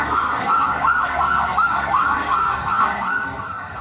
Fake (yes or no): yes